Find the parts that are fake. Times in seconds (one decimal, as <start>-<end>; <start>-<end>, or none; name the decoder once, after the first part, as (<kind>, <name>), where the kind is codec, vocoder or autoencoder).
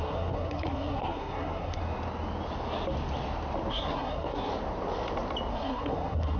0.0-1.8 (codec, SNAC); 3.7-4.5; 5.5-6.4